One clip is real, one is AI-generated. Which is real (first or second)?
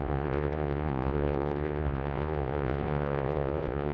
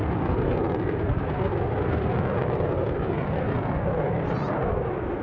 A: second